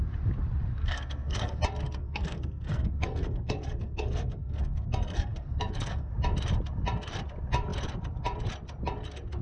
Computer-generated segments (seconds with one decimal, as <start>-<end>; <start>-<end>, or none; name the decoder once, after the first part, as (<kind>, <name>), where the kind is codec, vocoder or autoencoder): 0.7-1.6 (codec, SNAC); 2.0-6.1